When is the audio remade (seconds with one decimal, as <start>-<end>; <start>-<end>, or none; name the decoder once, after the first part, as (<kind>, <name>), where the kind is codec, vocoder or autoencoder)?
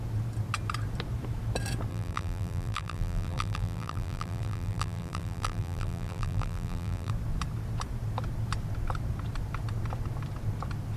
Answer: 1.9-7.1 (vocoder, BigVGAN v2)